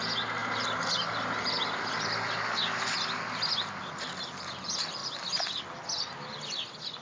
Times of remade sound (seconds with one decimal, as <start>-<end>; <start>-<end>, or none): none